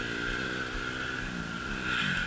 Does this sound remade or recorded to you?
recorded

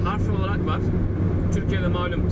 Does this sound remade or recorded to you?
recorded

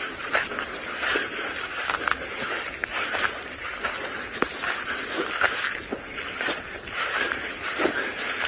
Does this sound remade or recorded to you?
recorded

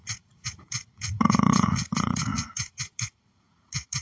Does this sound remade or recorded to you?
remade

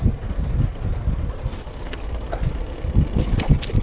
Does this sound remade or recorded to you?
recorded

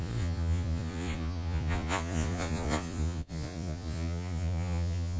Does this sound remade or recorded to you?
remade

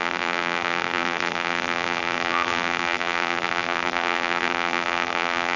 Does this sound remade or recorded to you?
remade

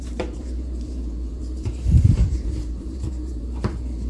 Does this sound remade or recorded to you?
remade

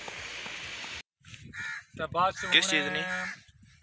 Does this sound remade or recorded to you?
recorded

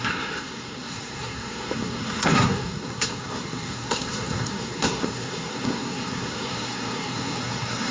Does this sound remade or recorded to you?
remade